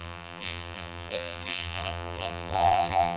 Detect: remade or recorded remade